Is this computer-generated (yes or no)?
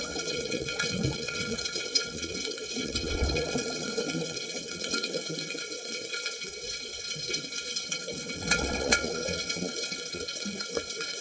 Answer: yes